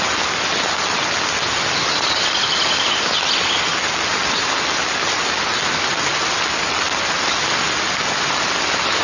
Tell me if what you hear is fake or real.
real